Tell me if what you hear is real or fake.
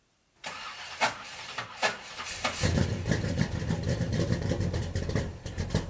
fake